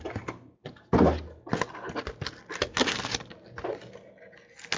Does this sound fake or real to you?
real